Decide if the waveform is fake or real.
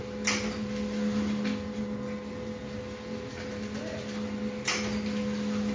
real